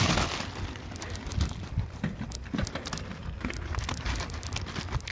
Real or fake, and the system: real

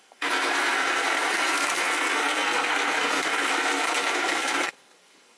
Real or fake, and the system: fake, codec, SNAC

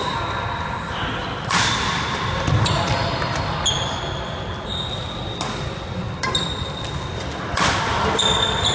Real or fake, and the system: real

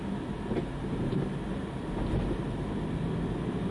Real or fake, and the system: real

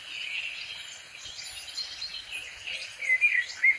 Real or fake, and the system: real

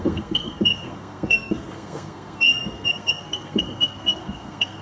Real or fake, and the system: fake, codec, SNAC